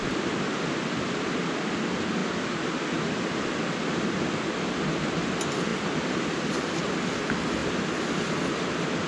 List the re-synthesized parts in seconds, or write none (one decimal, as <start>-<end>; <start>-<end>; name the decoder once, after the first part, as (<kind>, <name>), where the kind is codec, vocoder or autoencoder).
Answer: none